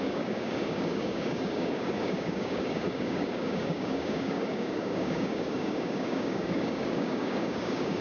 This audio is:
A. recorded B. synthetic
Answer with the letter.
B